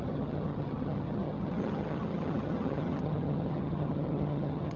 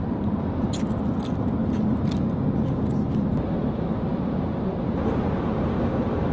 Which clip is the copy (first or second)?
first